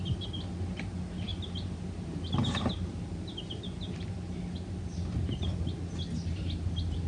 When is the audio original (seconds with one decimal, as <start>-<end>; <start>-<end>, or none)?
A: 0.0-1.3; 4.1-7.1